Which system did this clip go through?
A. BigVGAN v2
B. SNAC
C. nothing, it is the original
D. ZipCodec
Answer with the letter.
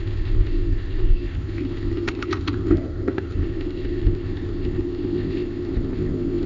D